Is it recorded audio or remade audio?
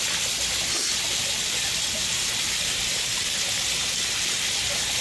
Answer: recorded